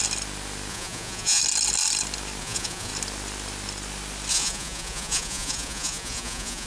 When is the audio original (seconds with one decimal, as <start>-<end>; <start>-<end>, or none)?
0.0-0.7; 1.4-2.4; 2.9-4.3